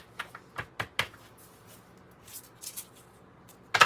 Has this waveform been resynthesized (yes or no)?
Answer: no